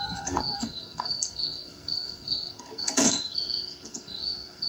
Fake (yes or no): yes